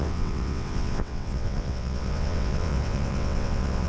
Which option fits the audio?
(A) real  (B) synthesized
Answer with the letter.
B